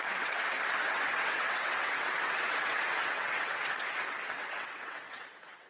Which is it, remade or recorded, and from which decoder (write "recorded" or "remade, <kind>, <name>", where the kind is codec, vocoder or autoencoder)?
remade, vocoder, WaveNeXt